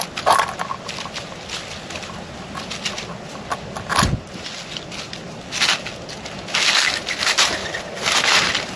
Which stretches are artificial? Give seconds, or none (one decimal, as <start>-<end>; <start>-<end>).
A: none